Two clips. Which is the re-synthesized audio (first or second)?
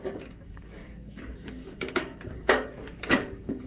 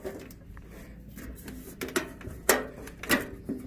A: first